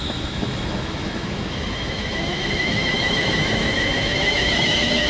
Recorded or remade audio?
remade